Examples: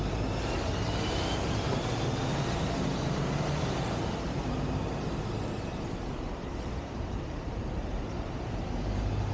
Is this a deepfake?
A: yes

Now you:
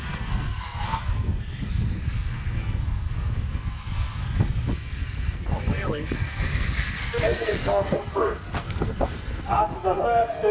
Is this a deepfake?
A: yes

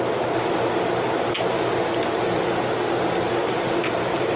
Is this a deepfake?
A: no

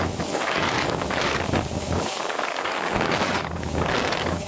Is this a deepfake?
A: yes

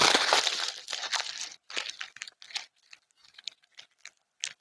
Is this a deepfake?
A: no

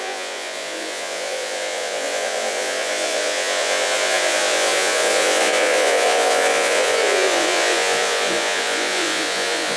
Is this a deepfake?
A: yes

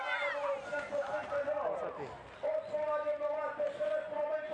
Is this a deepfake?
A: no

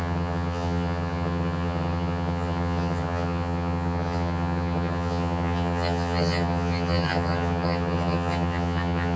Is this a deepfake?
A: yes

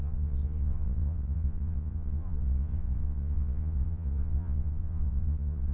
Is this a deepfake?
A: yes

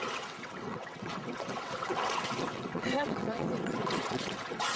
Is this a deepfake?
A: yes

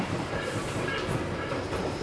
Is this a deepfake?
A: no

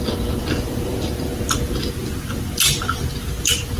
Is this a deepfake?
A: no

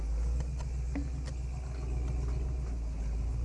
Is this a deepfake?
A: no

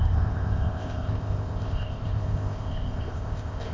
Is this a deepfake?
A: yes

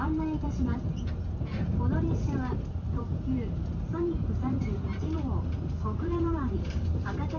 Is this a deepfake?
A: yes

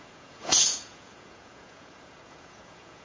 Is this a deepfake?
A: yes